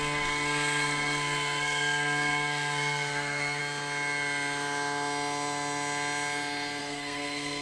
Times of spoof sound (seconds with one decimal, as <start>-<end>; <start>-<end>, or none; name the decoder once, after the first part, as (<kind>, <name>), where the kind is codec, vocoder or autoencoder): 0.0-3.6 (codec, SNAC); 6.8-7.6